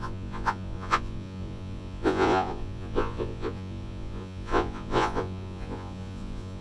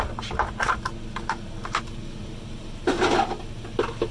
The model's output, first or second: first